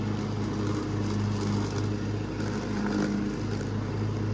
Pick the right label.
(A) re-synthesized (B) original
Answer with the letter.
B